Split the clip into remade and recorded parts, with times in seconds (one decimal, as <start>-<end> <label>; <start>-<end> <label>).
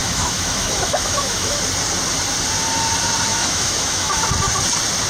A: 0.0-1.6 remade; 1.6-3.3 recorded; 3.3-4.2 remade; 4.2-5.1 recorded